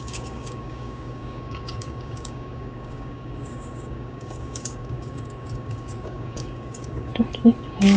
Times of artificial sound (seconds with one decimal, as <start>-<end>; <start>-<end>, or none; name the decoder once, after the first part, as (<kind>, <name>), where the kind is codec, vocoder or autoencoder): 0.0-7.1 (codec, DAC); 7.6-8.0